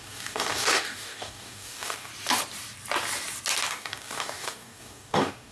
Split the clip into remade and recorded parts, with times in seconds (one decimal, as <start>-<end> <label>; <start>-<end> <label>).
0.0-2.1 remade; 2.1-3.7 recorded; 3.7-5.5 remade